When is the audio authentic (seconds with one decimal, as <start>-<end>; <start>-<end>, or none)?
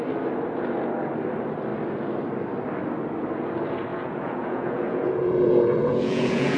0.0-3.9